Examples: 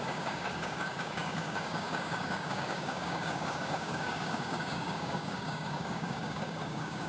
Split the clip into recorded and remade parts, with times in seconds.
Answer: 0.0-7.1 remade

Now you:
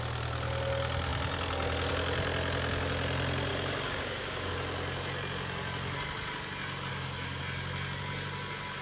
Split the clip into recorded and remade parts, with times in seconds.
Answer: 0.0-3.5 recorded; 3.5-4.5 remade; 4.5-6.9 recorded; 6.9-7.4 remade; 7.4-8.8 recorded